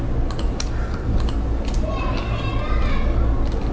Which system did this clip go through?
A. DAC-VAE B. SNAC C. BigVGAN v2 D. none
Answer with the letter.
D